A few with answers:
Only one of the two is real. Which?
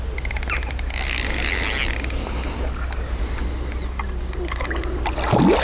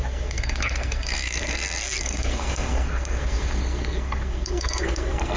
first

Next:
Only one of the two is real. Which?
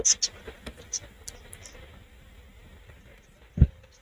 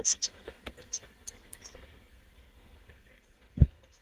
first